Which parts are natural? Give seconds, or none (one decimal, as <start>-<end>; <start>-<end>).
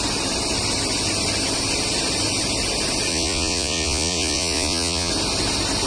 0.0-3.1; 5.1-5.9